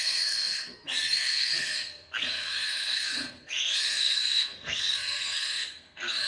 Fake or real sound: fake